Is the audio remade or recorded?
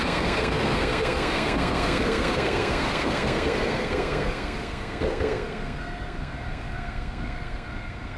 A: remade